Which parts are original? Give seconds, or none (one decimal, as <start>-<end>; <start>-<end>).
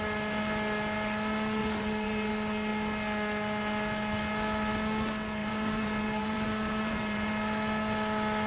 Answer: 0.0-1.6; 2.3-5.4; 7.3-8.5